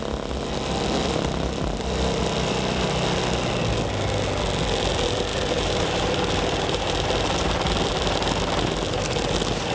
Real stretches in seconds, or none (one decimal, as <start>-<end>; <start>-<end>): 0.0-1.0; 3.2-5.3; 8.4-9.7